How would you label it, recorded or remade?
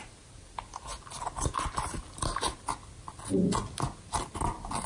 recorded